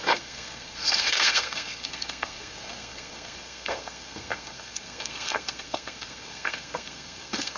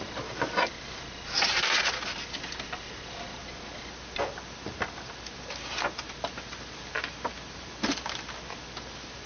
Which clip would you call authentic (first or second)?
second